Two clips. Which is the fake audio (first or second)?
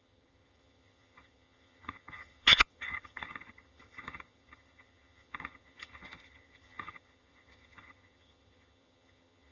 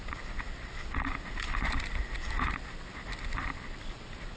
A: first